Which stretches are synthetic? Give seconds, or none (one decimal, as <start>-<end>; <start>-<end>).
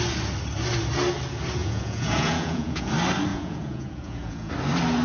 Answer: 1.6-2.9; 3.3-4.5